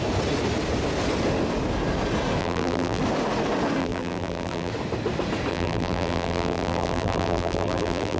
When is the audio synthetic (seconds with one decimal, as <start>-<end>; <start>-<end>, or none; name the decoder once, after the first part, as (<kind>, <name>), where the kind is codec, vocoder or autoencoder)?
2.4-3.0 (vocoder, BigVGAN v2); 3.8-4.7; 5.5-8.2